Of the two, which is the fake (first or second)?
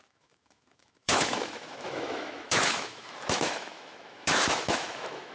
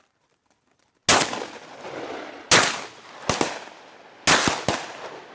first